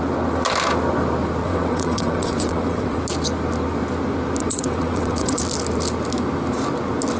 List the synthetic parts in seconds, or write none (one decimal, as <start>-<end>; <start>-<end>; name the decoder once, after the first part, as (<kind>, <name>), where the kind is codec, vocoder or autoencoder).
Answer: 1.4-3.0 (vocoder, WaveNeXt); 4.4-5.4